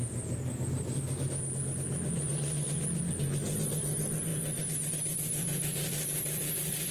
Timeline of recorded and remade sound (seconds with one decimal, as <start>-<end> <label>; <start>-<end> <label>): 0.0-6.9 recorded